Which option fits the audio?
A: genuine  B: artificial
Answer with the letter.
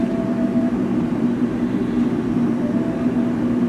A